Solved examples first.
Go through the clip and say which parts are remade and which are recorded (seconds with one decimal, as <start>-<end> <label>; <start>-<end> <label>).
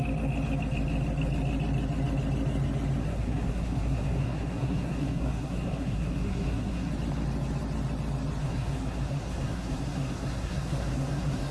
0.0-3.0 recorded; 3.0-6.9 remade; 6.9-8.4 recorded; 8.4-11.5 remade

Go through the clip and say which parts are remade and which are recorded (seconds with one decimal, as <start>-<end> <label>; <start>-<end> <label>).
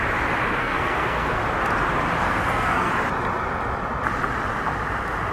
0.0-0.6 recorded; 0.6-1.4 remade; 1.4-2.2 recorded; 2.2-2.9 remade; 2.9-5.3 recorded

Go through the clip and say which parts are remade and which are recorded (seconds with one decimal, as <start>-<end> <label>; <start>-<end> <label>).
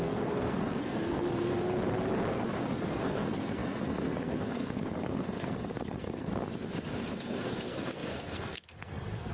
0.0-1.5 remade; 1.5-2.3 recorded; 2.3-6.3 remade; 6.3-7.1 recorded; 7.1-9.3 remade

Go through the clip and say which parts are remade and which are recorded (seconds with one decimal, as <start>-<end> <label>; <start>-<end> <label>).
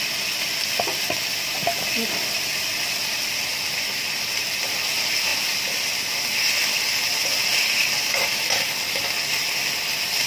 0.0-10.3 recorded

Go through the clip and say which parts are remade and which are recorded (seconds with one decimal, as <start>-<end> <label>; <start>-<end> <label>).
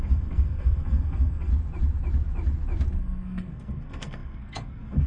0.0-1.5 remade; 1.5-3.0 recorded; 3.0-5.1 remade